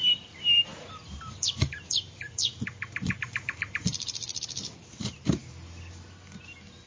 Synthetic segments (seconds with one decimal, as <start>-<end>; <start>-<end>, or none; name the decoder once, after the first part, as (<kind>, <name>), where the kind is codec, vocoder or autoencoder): 0.0-0.7 (vocoder, BigVGAN v2); 1.3-2.5; 3.2-5.4